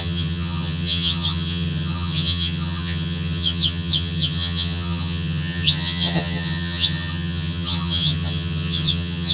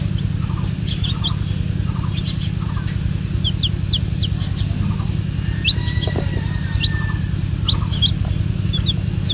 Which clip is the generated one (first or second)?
first